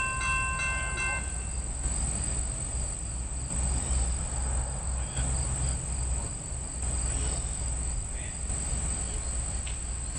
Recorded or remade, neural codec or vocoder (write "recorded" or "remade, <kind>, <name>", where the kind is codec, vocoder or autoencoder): recorded